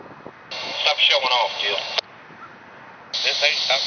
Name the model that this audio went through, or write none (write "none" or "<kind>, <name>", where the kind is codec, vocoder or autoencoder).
none